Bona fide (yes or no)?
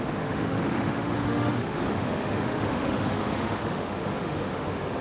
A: no